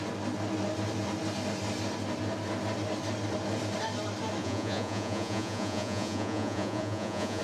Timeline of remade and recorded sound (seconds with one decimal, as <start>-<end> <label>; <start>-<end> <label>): 0.0-4.4 recorded; 4.4-7.4 remade